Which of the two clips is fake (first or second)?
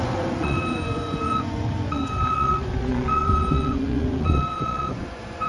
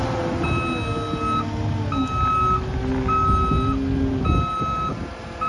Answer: first